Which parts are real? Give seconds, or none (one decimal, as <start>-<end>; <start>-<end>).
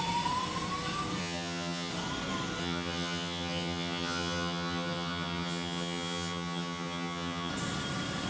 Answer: 0.0-1.2; 1.9-2.6; 7.5-8.3